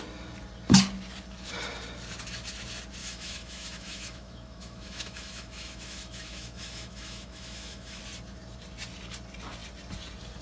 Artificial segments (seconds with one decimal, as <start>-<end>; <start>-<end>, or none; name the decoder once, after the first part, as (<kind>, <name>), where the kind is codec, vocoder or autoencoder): 3.0-8.0 (autoencoder, DAC-VAE)